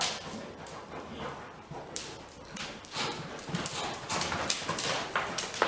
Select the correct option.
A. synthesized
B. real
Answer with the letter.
A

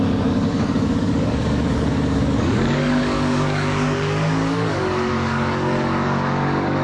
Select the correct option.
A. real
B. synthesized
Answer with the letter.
B